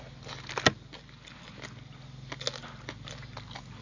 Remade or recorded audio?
recorded